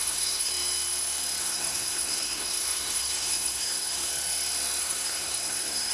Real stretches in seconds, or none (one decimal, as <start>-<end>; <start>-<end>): 0.5-1.4; 4.1-4.8